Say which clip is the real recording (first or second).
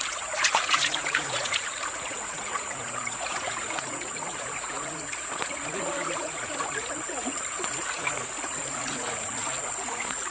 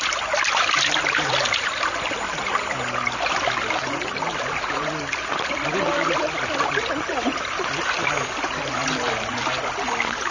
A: second